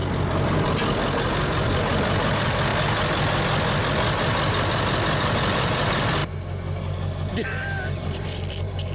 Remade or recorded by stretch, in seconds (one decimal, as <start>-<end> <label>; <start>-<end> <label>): 0.0-1.3 recorded; 1.3-2.7 remade; 2.7-5.2 recorded; 5.2-6.2 remade; 6.2-7.3 recorded; 7.3-8.9 remade